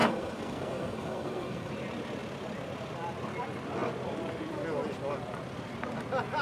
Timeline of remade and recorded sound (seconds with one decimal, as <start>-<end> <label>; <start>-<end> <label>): 0.0-1.7 remade; 1.7-6.4 recorded